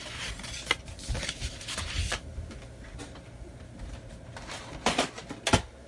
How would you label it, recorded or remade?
recorded